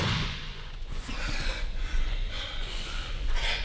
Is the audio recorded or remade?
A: remade